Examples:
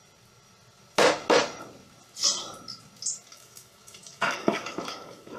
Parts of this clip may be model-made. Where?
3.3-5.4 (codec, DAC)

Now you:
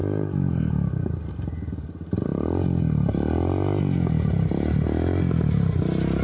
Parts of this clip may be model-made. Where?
none

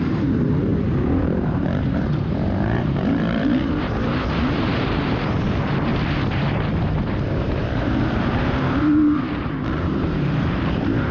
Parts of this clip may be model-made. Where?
0.0-0.7 (vocoder, BigVGAN v2); 1.2-5.9; 7.3-11.1

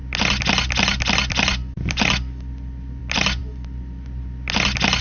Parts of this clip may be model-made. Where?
none

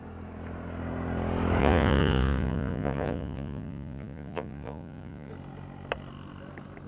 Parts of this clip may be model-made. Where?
1.6-5.3 (vocoder, Vocos)

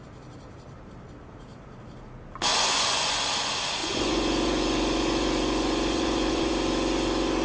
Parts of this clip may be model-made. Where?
2.5-3.3 (vocoder, Vocos); 3.8-6.5

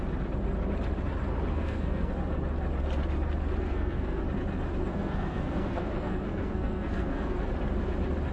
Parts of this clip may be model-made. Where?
1.5-2.1 (codec, SNAC); 3.7-4.2; 4.9-7.4